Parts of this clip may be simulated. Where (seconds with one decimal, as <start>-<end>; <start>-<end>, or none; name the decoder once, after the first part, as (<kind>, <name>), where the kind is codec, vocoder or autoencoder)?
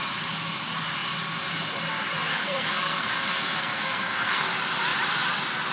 2.3-4.5 (codec, SNAC)